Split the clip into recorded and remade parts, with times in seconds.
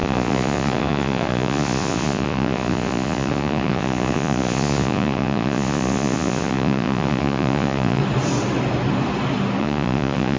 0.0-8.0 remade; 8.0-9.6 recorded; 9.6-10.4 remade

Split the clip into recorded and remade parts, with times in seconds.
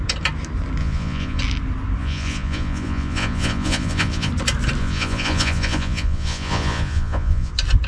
0.0-0.8 recorded; 0.8-1.4 remade; 1.4-2.0 recorded; 2.0-4.3 remade; 4.3-4.8 recorded; 4.8-7.5 remade; 7.5-7.9 recorded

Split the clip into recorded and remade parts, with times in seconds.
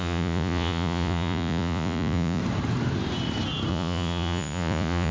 0.0-2.4 remade; 2.4-3.7 recorded; 3.7-5.1 remade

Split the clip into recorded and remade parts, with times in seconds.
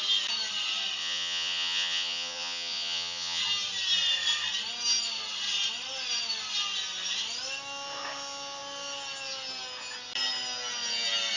0.0-1.0 recorded; 1.0-3.4 remade; 3.4-11.4 recorded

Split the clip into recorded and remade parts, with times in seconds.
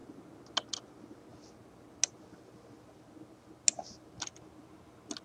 0.0-5.2 recorded